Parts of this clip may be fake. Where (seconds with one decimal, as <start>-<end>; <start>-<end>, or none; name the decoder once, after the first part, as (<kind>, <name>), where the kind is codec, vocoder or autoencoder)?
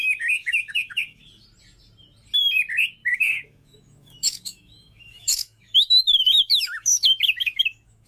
0.0-1.2 (autoencoder, DAC-VAE); 3.0-8.1